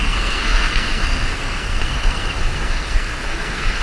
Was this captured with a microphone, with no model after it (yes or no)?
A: no